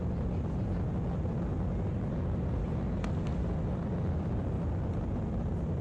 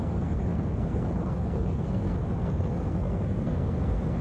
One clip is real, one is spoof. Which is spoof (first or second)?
second